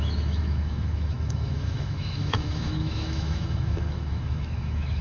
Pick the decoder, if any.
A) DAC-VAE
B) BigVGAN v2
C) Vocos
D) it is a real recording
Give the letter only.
A